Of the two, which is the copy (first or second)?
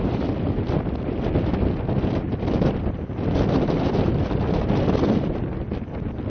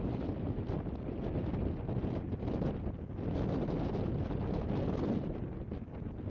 first